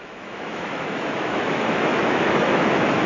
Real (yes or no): no